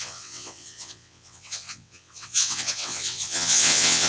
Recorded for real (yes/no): no